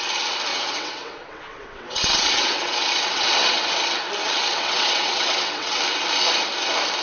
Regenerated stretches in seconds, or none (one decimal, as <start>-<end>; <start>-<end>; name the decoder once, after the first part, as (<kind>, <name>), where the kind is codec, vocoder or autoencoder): 0.5-3.6 (vocoder, WaveNeXt); 4.2-5.8